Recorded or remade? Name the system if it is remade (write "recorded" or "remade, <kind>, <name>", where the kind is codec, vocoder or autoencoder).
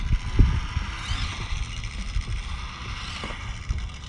recorded